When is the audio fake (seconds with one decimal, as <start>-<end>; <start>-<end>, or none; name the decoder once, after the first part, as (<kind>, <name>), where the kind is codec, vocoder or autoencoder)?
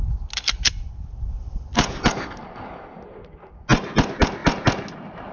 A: none